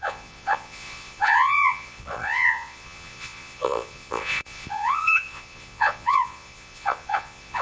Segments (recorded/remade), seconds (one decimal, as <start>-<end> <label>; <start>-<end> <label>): 0.0-7.6 remade